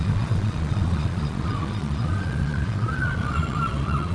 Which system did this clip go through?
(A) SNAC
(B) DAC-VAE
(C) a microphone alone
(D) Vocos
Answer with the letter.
D